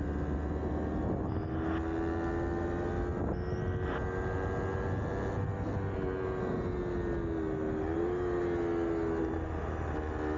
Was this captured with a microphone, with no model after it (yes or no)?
yes